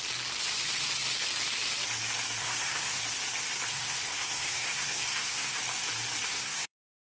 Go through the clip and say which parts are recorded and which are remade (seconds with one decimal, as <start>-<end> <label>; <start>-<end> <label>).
0.0-2.4 recorded; 2.4-3.0 remade; 3.0-3.7 recorded; 3.7-5.6 remade; 5.6-6.3 recorded; 6.3-7.1 remade

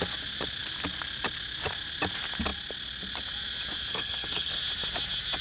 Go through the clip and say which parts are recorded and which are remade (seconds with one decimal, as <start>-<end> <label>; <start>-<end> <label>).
0.0-3.9 recorded; 3.9-4.6 remade; 4.6-5.4 recorded

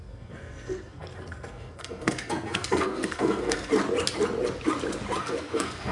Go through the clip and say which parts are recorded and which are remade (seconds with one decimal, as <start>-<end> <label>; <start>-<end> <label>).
0.0-3.7 remade; 3.7-5.2 recorded; 5.2-5.9 remade

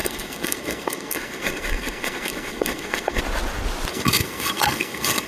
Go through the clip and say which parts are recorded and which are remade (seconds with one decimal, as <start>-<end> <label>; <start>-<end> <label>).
0.0-3.2 remade; 3.2-3.9 recorded; 3.9-5.3 remade

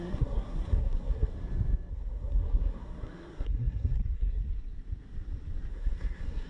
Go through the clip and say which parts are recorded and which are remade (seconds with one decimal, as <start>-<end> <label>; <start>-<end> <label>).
0.0-1.3 remade; 1.3-1.9 recorded; 1.9-4.4 remade; 4.4-5.7 recorded; 5.7-6.5 remade

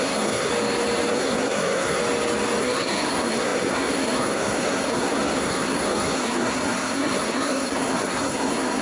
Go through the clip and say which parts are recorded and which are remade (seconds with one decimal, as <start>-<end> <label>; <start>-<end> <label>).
0.0-0.5 remade; 0.5-1.1 recorded; 1.1-2.0 remade; 2.0-2.6 recorded; 2.6-8.8 remade

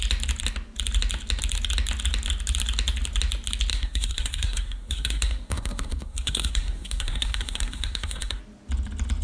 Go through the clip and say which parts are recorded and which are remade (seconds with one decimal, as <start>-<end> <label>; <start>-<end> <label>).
0.0-3.7 recorded; 3.7-8.4 remade; 8.4-9.2 recorded